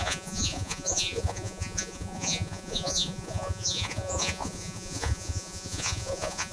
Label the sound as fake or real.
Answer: fake